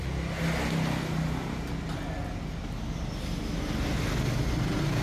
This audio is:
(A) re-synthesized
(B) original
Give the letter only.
B